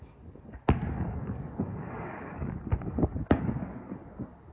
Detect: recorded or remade remade